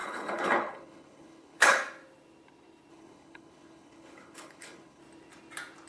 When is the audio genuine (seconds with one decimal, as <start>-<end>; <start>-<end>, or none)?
1.8-2.9; 5.0-5.9